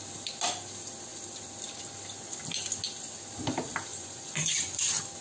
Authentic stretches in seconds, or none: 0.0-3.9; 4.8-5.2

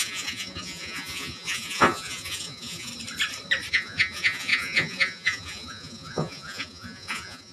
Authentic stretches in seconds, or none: 2.9-3.7